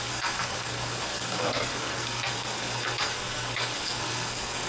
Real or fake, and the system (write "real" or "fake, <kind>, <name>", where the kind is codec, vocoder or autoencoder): fake, codec, SNAC